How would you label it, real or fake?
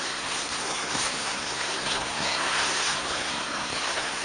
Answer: fake